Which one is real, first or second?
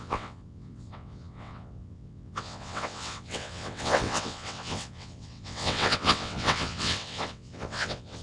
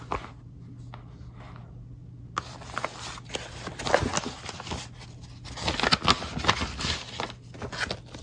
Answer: second